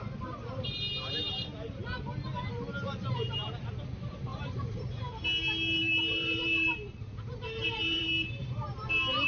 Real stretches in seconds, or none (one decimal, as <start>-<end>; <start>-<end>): 0.0-4.3; 4.8-5.8; 8.0-8.4